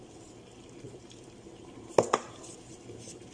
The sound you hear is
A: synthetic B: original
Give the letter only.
B